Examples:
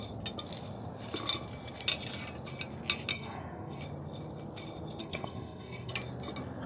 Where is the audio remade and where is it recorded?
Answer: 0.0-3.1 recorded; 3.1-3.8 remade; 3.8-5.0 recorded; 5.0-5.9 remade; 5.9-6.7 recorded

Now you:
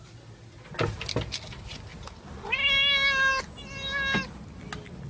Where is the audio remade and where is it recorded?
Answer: 0.0-5.1 recorded